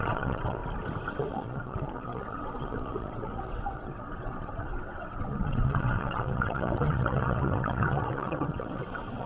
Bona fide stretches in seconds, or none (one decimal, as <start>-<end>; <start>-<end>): 0.6-1.1